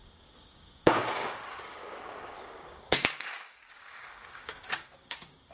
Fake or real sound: fake